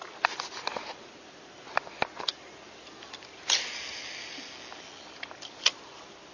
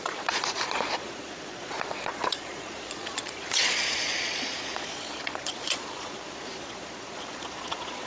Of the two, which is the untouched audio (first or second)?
first